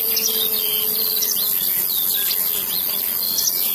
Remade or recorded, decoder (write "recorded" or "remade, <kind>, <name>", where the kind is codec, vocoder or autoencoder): recorded